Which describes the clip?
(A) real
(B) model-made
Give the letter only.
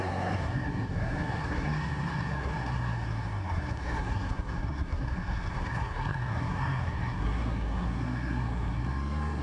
B